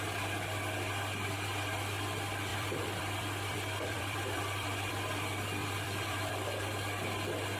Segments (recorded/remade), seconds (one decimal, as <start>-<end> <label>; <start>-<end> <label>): 0.0-2.5 recorded; 2.5-4.9 remade; 4.9-5.6 recorded; 5.6-6.3 remade; 6.3-7.6 recorded